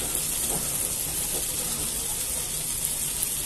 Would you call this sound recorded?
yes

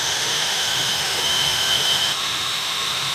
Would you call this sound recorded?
no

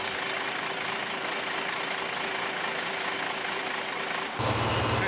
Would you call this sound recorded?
yes